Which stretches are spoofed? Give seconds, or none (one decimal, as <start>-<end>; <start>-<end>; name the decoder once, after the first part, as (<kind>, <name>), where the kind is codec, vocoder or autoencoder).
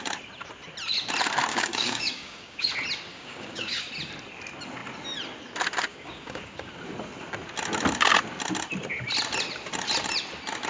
1.5-2.7 (codec, DAC); 3.1-3.9; 5.9-6.7